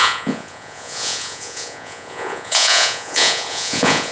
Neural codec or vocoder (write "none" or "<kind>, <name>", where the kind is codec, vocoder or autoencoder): vocoder, Vocos